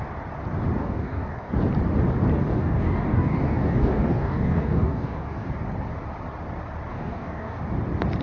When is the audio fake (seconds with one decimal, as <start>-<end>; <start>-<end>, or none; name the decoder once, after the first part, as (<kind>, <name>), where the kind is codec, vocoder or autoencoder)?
0.8-1.5 (codec, DAC); 2.4-5.5; 6.9-7.6